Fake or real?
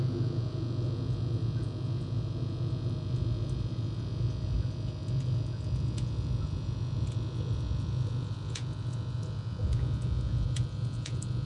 fake